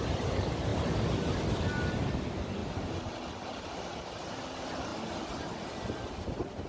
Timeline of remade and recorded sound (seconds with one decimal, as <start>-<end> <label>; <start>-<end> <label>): 0.0-0.7 recorded; 0.7-1.3 remade; 1.3-6.7 recorded